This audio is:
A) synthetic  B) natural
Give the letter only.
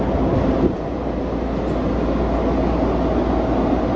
B